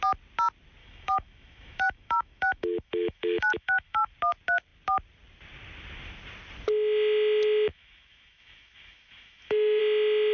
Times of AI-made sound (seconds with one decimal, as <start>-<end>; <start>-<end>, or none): 0.8-4.1; 7.7-9.8